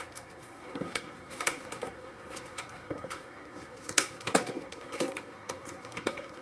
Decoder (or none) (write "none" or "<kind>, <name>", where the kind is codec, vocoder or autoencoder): codec, SNAC